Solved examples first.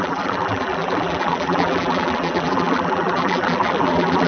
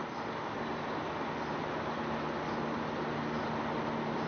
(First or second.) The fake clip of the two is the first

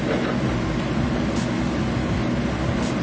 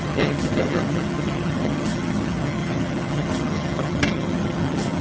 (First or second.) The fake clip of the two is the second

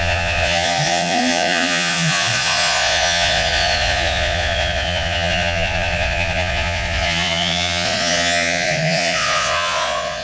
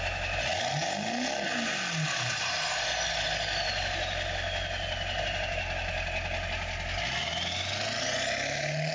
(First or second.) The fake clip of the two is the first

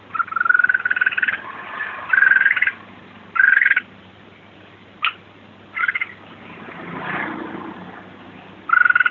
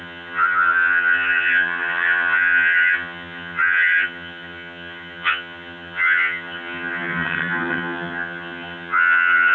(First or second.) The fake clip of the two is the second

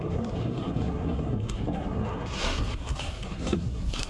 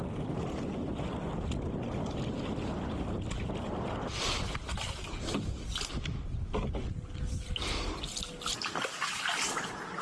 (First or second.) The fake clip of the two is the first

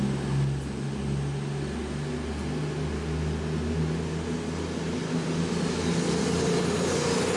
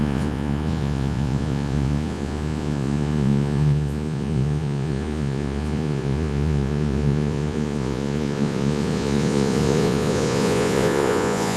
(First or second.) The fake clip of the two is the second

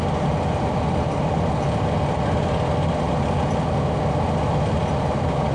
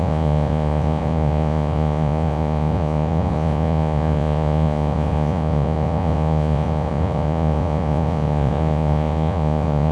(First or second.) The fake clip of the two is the second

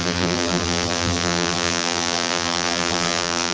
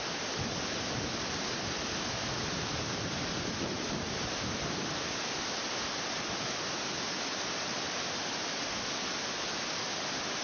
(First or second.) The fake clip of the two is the first